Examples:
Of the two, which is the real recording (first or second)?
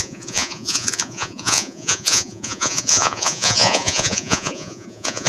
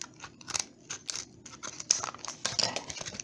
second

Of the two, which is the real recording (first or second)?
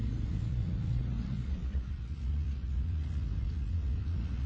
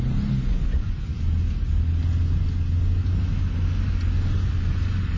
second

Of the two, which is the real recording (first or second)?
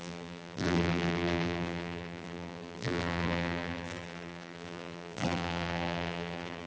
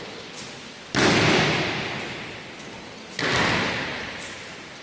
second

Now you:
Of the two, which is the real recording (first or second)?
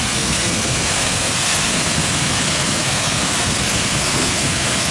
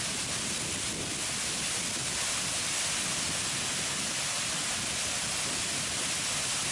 second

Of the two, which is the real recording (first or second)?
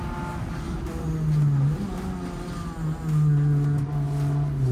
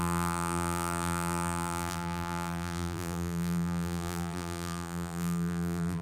first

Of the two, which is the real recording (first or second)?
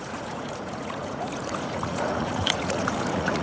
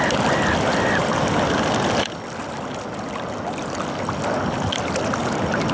second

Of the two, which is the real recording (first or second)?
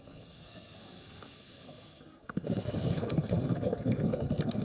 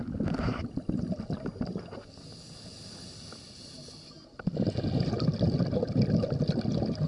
second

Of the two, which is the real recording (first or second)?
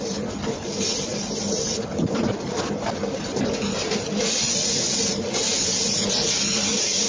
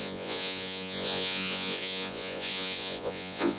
first